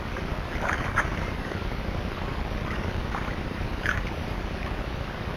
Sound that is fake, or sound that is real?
fake